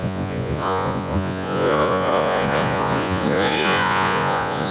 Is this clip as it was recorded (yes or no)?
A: no